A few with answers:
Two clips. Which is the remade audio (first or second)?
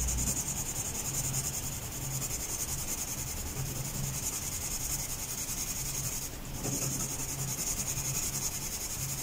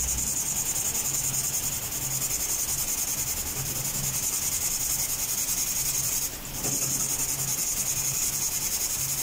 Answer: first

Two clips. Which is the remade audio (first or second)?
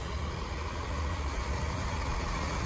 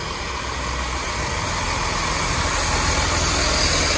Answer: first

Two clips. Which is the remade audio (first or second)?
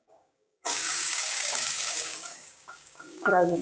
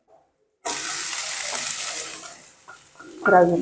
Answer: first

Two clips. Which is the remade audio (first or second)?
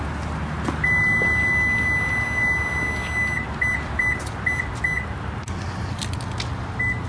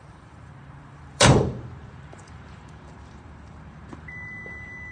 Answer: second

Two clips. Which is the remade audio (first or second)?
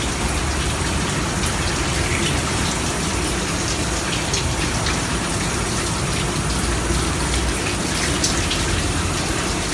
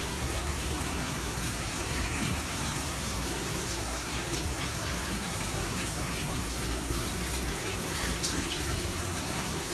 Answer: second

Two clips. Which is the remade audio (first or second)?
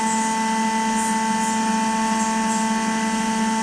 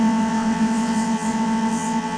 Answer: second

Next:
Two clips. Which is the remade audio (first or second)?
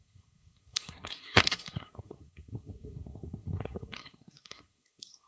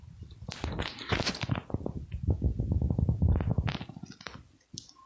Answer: first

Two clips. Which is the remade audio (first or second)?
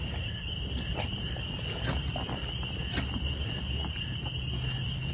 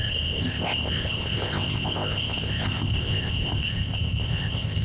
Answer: second